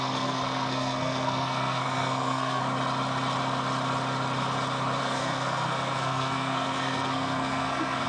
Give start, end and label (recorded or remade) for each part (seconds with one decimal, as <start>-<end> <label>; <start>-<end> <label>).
0.0-2.6 remade; 2.6-5.0 recorded; 5.0-8.1 remade